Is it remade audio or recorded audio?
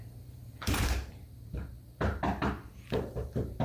remade